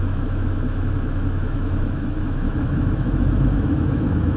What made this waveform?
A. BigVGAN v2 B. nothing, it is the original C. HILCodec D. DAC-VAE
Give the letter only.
D